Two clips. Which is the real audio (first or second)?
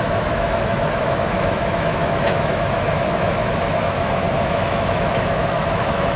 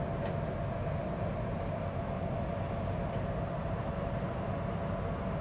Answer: second